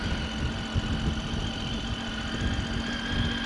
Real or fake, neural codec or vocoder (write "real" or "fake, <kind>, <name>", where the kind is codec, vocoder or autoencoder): real